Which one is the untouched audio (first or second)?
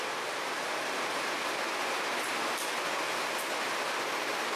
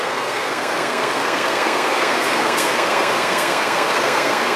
first